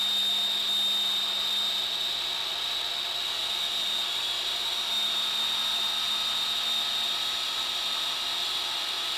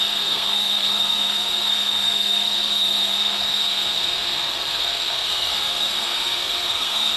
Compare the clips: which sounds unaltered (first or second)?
first